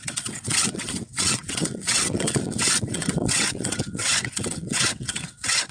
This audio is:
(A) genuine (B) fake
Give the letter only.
B